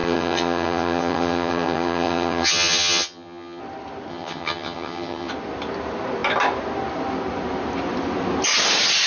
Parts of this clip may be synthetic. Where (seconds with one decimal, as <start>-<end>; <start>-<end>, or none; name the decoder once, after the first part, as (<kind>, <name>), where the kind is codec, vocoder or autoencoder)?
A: 0.0-3.6 (vocoder, HiFi-GAN); 4.1-5.3